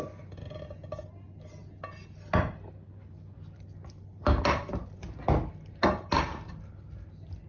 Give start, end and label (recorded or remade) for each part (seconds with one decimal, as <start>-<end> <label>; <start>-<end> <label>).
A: 0.0-7.5 recorded

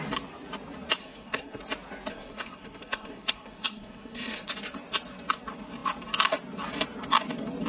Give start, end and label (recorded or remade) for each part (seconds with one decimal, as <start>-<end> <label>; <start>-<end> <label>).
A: 0.0-1.0 recorded; 1.0-1.6 remade; 1.6-2.1 recorded; 2.1-4.5 remade; 4.5-7.7 recorded

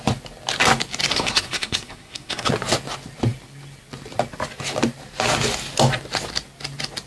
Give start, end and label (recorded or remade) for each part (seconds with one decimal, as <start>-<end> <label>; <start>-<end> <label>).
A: 0.0-1.1 recorded; 1.1-2.5 remade; 2.5-7.1 recorded

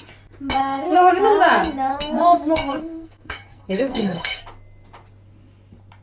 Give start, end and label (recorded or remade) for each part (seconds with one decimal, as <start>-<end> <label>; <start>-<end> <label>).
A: 0.0-0.6 recorded; 0.6-1.1 remade; 1.1-1.9 recorded; 1.9-4.4 remade; 4.4-6.0 recorded

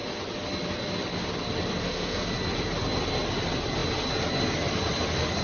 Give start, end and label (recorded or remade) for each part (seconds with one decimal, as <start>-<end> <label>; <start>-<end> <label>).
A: 0.0-1.8 recorded; 1.8-2.3 remade; 2.3-5.4 recorded

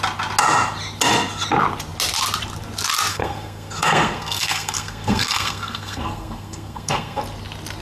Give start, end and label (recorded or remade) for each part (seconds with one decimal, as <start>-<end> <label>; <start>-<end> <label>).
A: 0.0-3.1 recorded; 3.1-7.2 remade; 7.2-7.8 recorded

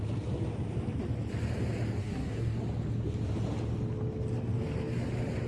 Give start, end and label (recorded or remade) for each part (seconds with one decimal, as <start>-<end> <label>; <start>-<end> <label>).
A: 0.0-2.0 recorded; 2.0-2.6 remade; 2.6-5.5 recorded